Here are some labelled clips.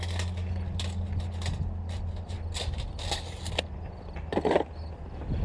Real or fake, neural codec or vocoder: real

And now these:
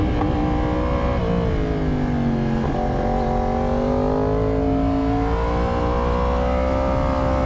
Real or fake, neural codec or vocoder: real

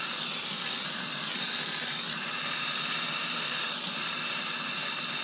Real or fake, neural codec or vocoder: real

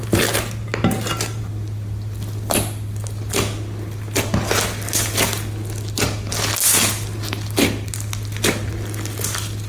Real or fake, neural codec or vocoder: real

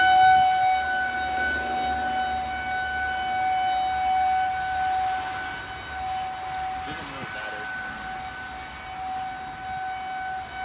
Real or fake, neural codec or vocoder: real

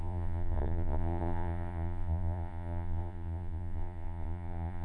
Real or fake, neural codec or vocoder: fake, vocoder, Vocos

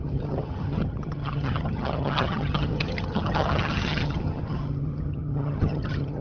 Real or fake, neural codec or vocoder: fake, vocoder, HiFi-GAN